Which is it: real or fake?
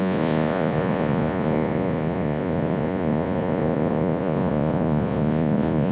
fake